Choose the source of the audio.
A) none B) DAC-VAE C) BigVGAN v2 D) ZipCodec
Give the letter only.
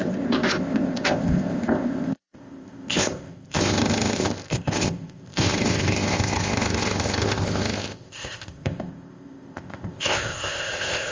D